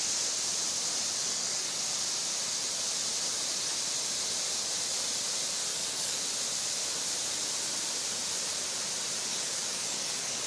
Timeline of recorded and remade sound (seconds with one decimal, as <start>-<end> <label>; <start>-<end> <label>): 0.0-1.2 recorded; 1.2-1.8 remade; 1.8-5.7 recorded; 5.7-6.2 remade; 6.2-9.3 recorded; 9.3-10.5 remade